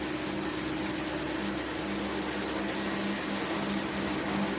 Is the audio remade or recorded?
recorded